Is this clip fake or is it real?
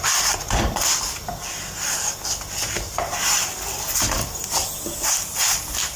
real